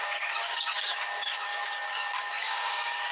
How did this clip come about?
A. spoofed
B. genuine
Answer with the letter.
A